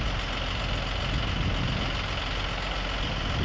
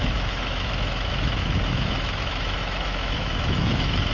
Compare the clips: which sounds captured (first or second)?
first